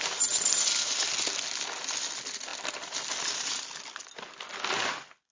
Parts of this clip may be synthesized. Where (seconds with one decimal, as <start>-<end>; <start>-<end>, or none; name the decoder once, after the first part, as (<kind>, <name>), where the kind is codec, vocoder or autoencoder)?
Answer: 2.5-3.8 (vocoder, BigVGAN v2)